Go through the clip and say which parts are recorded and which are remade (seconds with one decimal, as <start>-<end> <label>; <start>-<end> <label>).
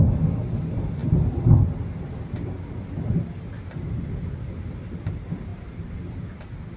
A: 0.0-5.5 recorded; 5.5-6.2 remade; 6.2-6.8 recorded